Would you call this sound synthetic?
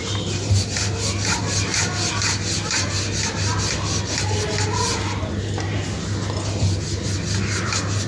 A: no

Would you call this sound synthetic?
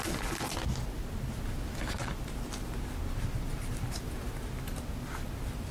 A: no